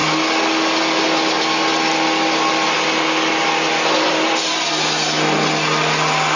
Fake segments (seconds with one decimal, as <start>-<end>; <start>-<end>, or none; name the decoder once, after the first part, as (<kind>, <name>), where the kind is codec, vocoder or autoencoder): none